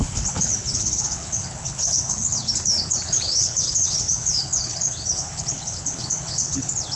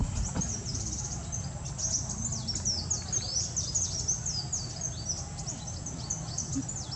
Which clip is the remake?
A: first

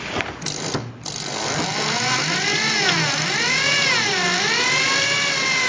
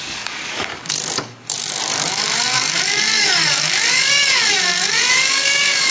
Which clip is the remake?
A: second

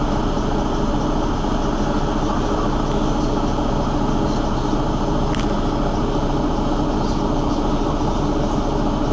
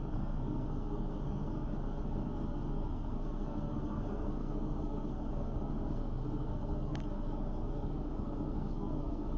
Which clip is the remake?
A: second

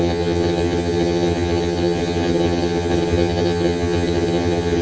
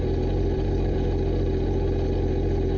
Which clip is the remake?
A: first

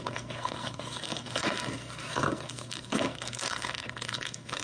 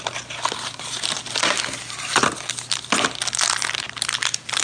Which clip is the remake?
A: first